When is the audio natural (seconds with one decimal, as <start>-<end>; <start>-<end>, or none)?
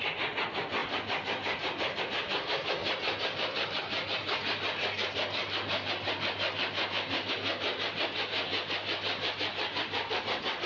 0.0-10.7